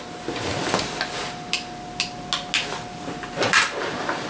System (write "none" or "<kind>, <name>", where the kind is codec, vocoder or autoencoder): none